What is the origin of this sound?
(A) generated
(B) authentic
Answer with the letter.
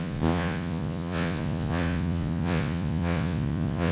A